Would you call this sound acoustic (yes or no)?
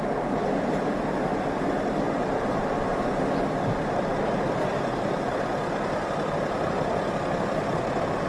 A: yes